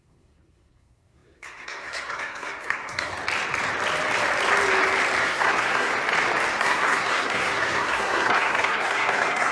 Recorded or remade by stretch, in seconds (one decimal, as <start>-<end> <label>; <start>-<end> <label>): 0.0-3.1 remade; 3.1-5.2 recorded; 5.2-5.9 remade; 5.9-6.6 recorded; 6.6-9.5 remade